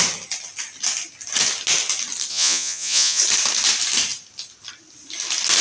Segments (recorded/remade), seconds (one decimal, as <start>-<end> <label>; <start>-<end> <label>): 0.0-2.3 recorded; 2.3-3.2 remade; 3.2-5.6 recorded

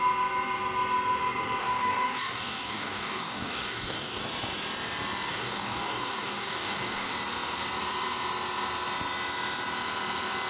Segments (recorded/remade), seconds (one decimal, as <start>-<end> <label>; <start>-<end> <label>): 0.0-1.6 recorded; 1.6-4.2 remade; 4.2-5.3 recorded; 5.3-7.1 remade; 7.1-10.5 recorded

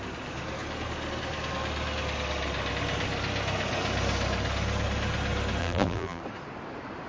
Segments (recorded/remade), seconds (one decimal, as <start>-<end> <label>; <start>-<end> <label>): 0.0-5.6 recorded; 5.6-6.2 remade; 6.2-7.1 recorded

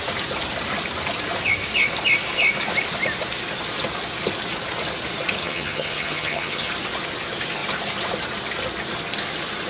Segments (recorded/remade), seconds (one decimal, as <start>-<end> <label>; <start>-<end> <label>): 0.0-5.4 recorded; 5.4-6.7 remade; 6.7-9.7 recorded

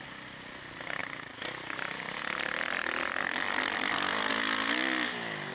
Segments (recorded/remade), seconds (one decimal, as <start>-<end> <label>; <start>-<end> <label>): 0.0-1.0 recorded; 1.0-4.3 remade; 4.3-5.5 recorded

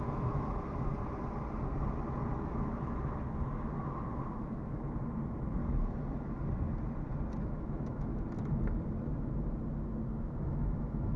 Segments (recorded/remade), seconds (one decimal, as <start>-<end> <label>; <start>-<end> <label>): 0.0-0.9 remade; 0.9-2.3 recorded; 2.3-5.6 remade; 5.6-7.4 recorded; 7.4-8.1 remade; 8.1-10.4 recorded; 10.4-11.2 remade

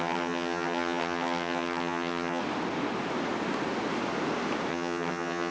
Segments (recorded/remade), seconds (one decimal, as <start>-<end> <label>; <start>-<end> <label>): 0.0-2.4 remade; 2.4-4.7 recorded; 4.7-5.5 remade